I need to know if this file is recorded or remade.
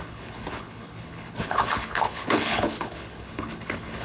remade